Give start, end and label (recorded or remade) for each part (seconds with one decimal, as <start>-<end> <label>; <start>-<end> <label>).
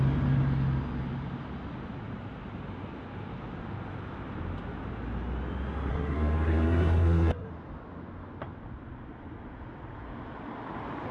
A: 0.0-5.9 recorded; 5.9-7.5 remade; 7.5-11.1 recorded